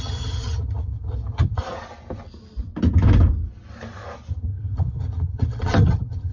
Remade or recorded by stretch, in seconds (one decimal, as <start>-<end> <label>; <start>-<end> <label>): 0.0-1.6 remade; 1.6-4.3 recorded; 4.3-6.3 remade